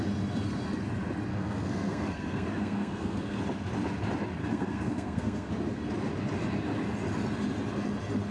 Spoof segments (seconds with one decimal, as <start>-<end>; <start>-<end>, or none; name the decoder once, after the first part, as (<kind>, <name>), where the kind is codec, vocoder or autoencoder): 1.3-3.4 (codec, SNAC); 4.4-5.5